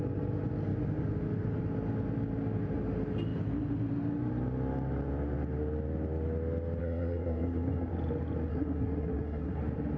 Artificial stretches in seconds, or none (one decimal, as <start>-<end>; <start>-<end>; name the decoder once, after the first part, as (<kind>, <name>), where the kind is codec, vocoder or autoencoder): 6.8-7.9 (codec, SNAC); 8.5-9.6